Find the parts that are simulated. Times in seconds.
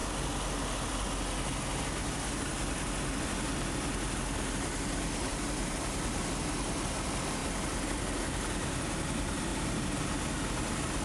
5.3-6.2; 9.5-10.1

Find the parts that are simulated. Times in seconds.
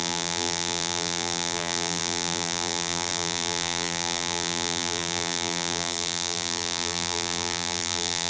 0.0-8.3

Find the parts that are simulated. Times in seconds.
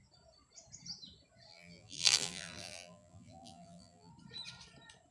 1.5-4.1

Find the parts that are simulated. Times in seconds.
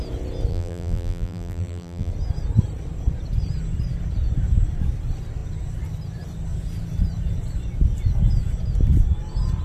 0.5-2.1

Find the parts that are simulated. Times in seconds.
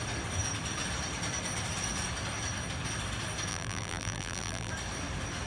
3.5-4.7